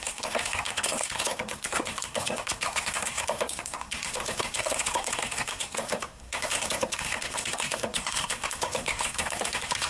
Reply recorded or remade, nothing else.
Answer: remade